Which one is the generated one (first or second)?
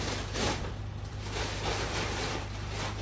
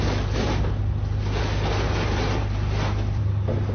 first